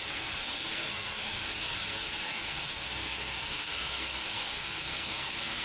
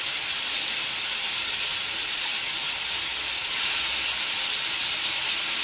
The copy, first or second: first